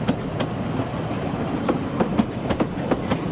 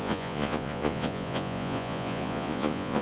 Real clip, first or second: first